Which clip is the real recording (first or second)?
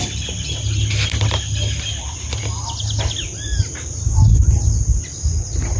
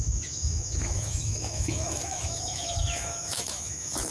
first